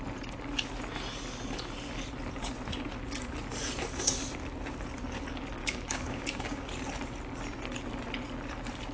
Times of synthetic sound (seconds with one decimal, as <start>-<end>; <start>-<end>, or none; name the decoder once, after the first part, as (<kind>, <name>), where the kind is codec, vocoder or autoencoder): 5.6-6.7 (codec, DAC)